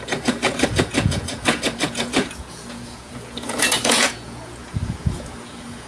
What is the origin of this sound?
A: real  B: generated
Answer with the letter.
B